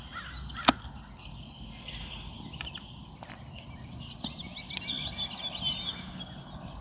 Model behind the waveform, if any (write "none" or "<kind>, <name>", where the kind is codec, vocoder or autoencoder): none